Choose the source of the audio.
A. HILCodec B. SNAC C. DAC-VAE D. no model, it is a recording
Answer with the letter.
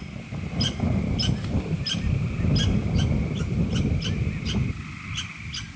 D